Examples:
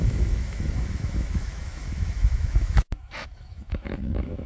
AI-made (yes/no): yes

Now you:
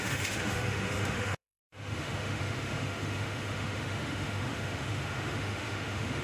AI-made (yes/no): yes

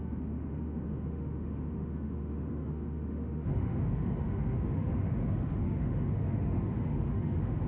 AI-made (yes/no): yes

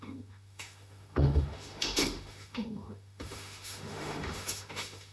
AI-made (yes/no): yes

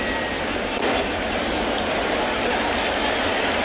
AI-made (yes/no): no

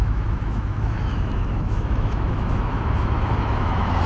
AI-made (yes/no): yes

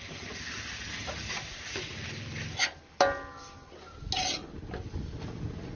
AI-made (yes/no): no